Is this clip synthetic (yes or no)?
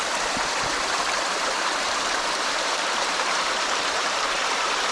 yes